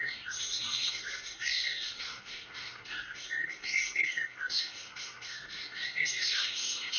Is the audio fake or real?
fake